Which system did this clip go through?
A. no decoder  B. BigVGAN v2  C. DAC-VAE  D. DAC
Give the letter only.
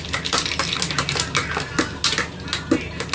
A